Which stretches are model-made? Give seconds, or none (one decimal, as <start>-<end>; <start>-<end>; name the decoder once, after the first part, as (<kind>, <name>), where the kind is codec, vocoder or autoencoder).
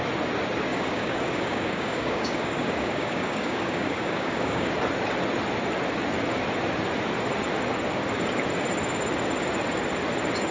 0.7-4.7 (codec, DAC)